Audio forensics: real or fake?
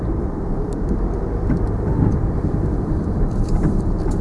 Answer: fake